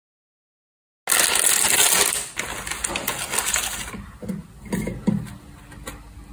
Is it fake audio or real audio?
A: real